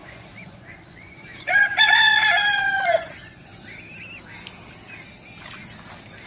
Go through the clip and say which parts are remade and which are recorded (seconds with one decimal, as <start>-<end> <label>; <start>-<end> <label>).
0.0-3.6 remade; 3.6-6.3 recorded